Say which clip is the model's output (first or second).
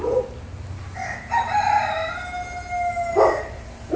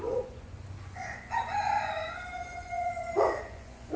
second